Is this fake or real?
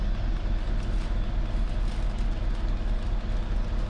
real